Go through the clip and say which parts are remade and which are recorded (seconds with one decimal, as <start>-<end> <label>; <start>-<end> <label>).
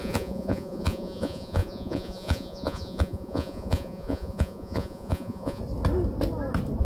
0.0-5.6 remade; 5.6-6.8 recorded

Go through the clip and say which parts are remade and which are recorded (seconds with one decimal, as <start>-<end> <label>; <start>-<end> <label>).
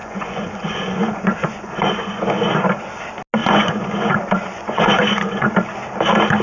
0.0-2.2 remade; 2.2-3.4 recorded; 3.4-4.1 remade; 4.1-4.5 recorded; 4.5-5.5 remade; 5.5-6.4 recorded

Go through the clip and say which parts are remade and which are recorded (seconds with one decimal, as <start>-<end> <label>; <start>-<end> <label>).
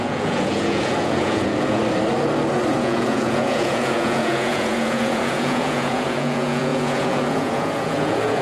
0.0-1.8 remade; 1.8-2.7 recorded; 2.7-8.4 remade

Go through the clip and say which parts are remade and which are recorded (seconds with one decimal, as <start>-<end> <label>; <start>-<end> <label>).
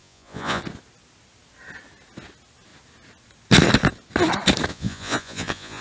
0.0-0.6 remade; 0.6-4.7 recorded; 4.7-5.8 remade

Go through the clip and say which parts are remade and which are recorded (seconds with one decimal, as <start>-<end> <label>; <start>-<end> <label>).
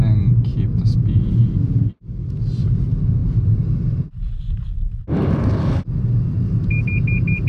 0.0-0.5 recorded; 0.5-1.3 remade; 1.3-7.5 recorded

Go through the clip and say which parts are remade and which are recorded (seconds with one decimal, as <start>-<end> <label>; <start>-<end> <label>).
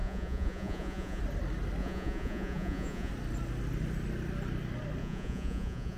0.0-1.2 remade; 1.2-1.8 recorded; 1.8-3.1 remade; 3.1-5.0 recorded; 5.0-6.0 remade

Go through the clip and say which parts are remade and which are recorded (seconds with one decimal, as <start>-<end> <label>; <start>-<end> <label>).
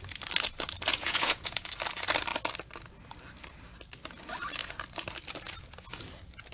0.0-0.9 recorded; 0.9-1.7 remade; 1.7-6.5 recorded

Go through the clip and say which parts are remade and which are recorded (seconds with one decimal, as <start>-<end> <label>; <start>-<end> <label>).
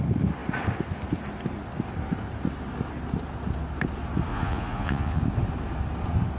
0.0-4.3 recorded; 4.3-5.2 remade; 5.2-6.4 recorded